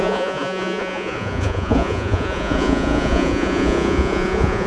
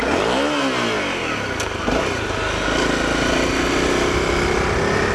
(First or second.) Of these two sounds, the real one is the second